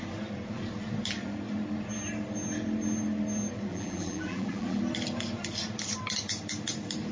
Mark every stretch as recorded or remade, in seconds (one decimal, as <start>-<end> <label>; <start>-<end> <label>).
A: 0.0-3.7 recorded; 3.7-4.8 remade; 4.8-7.1 recorded